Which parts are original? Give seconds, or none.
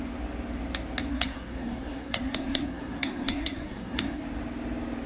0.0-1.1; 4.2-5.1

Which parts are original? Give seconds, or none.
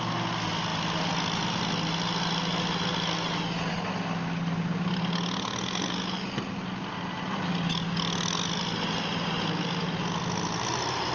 0.0-11.1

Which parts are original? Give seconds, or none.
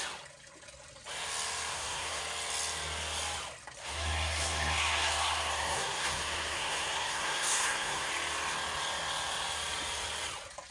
0.0-1.7; 2.2-3.8; 8.1-10.7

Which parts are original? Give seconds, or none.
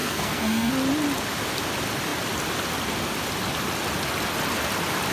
0.7-5.1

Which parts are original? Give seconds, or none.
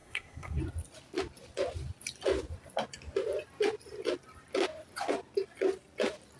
0.6-6.4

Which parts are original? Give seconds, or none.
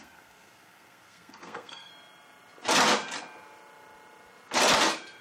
1.9-5.2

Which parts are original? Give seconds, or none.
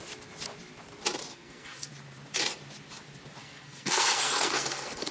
0.0-1.3; 1.9-3.4